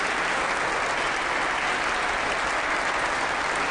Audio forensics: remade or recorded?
recorded